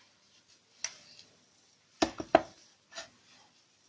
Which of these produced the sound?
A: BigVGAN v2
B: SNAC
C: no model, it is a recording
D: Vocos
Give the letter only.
C